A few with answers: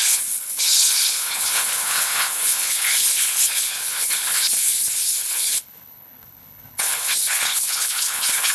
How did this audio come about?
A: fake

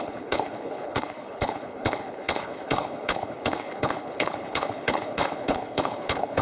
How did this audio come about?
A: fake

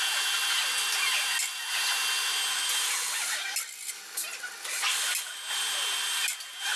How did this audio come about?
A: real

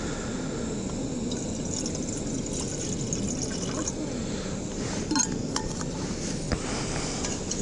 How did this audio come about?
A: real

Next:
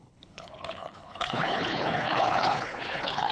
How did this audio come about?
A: fake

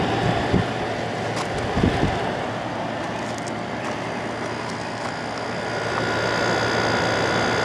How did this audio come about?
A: real